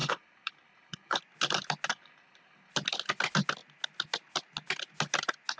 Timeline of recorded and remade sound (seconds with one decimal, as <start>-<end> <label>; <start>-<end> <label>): 0.0-1.2 remade; 1.2-1.9 recorded; 1.9-2.7 remade; 2.7-5.6 recorded